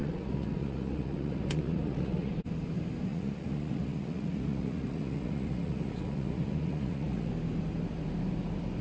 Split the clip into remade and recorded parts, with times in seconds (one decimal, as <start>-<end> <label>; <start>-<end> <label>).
0.0-2.3 remade; 2.3-3.1 recorded; 3.1-7.3 remade; 7.3-8.8 recorded